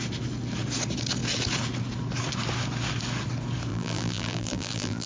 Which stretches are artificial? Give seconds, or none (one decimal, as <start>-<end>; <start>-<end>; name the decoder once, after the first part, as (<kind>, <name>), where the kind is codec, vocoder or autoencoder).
3.7-5.1 (vocoder, BigVGAN v2)